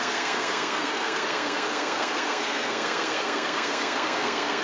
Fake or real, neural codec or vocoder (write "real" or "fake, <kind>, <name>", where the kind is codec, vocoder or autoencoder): fake, codec, SNAC